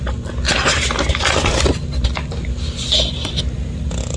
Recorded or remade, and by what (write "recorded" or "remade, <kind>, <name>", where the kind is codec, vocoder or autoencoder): recorded